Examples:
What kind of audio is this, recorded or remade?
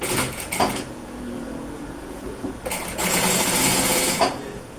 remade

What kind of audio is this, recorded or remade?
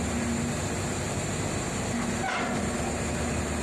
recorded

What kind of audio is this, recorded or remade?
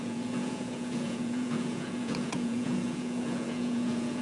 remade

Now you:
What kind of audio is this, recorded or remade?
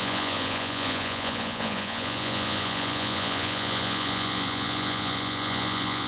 remade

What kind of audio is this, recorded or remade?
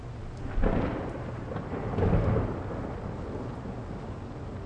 recorded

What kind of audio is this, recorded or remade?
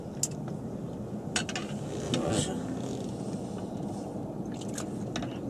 recorded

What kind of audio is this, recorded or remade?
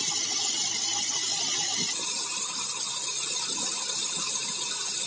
recorded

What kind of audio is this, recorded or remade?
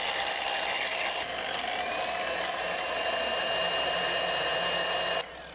recorded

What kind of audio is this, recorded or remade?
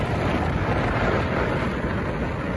recorded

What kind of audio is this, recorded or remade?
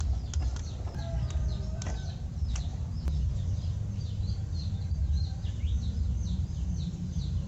recorded